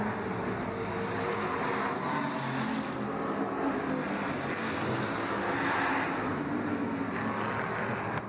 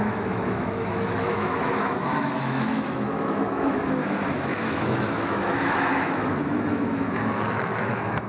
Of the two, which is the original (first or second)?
first